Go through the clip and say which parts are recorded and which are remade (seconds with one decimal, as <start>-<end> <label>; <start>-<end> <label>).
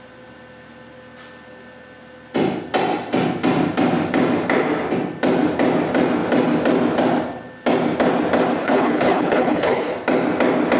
0.0-8.6 recorded; 8.6-9.9 remade; 9.9-10.8 recorded